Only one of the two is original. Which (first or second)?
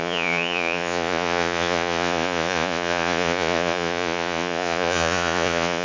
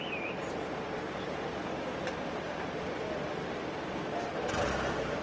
second